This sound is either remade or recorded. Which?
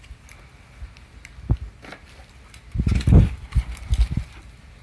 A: recorded